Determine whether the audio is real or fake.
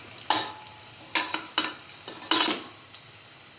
real